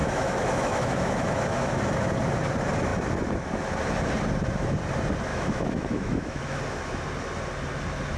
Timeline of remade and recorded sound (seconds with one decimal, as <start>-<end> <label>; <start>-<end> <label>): 0.0-1.8 remade; 1.8-5.3 recorded; 5.3-6.6 remade; 6.6-8.2 recorded